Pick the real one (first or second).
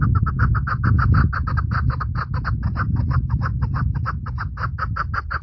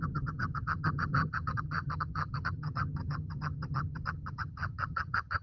first